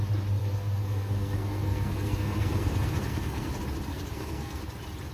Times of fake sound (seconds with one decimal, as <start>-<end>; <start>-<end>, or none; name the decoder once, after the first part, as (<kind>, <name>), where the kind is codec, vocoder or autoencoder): 0.4-3.5 (codec, SNAC); 3.9-4.6